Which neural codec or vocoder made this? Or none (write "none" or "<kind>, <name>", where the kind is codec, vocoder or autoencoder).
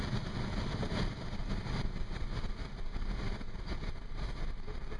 none